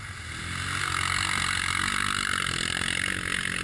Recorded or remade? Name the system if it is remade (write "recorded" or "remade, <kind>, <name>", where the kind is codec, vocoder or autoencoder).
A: recorded